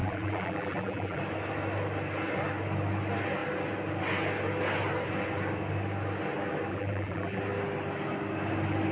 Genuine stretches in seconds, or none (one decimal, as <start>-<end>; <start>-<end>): 1.2-6.7; 7.4-8.9